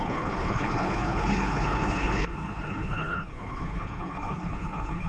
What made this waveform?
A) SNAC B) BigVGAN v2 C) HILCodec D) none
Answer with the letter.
C